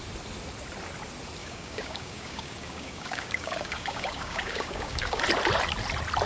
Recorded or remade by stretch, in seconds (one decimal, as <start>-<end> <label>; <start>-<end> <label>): 0.0-1.4 recorded; 1.4-5.2 remade; 5.2-6.3 recorded

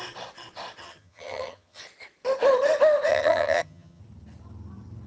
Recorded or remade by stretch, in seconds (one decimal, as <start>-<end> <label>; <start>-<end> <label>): 0.0-0.8 recorded; 0.8-1.8 remade; 1.8-3.1 recorded; 3.1-4.0 remade; 4.0-5.1 recorded

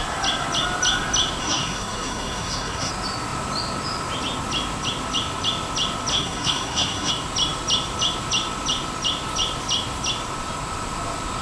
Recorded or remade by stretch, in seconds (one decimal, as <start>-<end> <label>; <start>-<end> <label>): 0.0-1.4 recorded; 1.4-2.9 remade; 2.9-6.1 recorded; 6.1-7.1 remade; 7.1-11.4 recorded

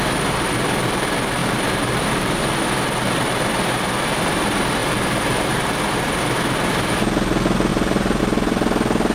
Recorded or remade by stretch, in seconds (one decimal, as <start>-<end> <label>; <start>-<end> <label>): 0.0-1.4 recorded; 1.4-2.4 remade; 2.4-4.8 recorded; 4.8-6.2 remade; 6.2-7.7 recorded; 7.7-8.2 remade; 8.2-9.1 recorded

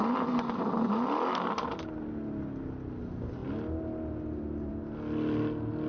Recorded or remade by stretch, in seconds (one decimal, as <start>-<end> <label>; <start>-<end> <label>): 0.0-5.9 recorded

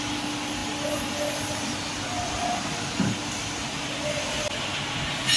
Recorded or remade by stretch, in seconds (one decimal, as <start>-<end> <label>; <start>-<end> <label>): 0.0-5.4 recorded